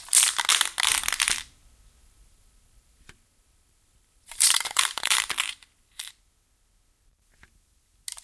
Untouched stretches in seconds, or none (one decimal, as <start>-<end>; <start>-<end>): 0.0-2.0; 6.1-8.2